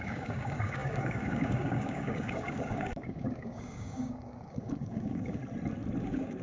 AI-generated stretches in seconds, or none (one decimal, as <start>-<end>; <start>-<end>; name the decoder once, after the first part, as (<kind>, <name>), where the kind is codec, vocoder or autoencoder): 0.0-5.4 (codec, DAC); 6.0-6.4